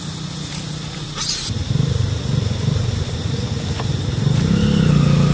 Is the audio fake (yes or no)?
no